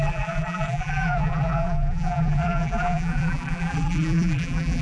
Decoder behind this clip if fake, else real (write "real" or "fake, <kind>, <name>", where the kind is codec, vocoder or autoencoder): fake, vocoder, BigVGAN v2